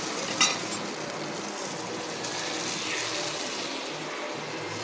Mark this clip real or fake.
real